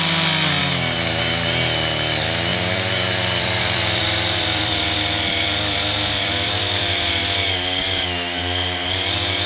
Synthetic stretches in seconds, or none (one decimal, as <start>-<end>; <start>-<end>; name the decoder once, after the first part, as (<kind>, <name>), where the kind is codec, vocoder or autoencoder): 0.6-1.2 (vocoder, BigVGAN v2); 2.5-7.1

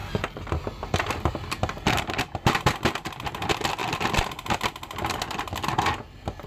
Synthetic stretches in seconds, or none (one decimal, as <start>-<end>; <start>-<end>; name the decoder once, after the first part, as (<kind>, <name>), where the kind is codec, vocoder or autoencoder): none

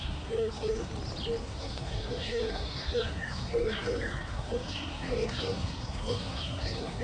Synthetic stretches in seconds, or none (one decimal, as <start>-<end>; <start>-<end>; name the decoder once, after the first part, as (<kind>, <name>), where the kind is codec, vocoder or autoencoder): 0.0-0.9 (codec, SNAC); 1.4-7.0